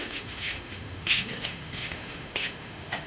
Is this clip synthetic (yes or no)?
yes